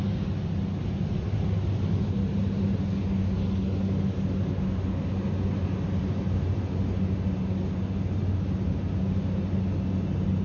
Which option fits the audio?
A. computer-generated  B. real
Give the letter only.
B